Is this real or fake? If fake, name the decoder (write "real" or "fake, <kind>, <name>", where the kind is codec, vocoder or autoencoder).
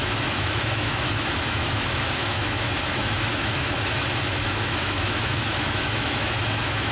fake, autoencoder, DAC-VAE